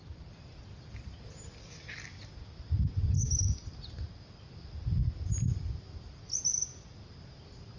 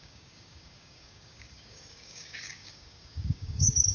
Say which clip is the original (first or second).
first